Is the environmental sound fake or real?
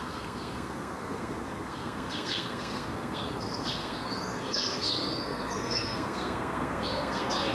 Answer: fake